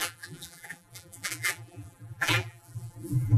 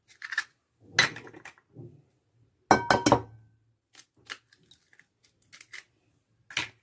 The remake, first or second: first